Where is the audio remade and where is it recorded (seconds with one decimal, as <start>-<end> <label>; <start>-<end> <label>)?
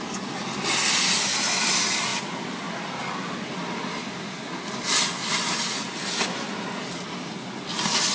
0.0-8.1 recorded